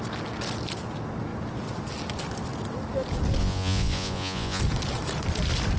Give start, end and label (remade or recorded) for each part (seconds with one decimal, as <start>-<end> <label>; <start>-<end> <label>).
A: 0.0-3.4 recorded; 3.4-4.6 remade; 4.6-5.8 recorded